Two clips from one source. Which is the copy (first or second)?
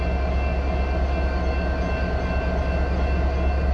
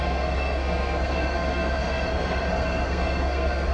second